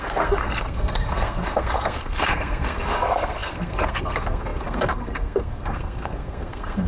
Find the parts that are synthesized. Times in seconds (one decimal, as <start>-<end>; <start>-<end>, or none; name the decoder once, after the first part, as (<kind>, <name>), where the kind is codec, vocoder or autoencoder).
0.0-6.9 (codec, SNAC)